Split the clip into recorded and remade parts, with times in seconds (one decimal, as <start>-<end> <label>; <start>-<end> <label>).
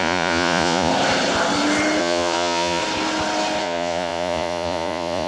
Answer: 0.0-0.9 remade; 0.9-2.0 recorded; 2.0-2.8 remade; 2.8-3.6 recorded; 3.6-5.3 remade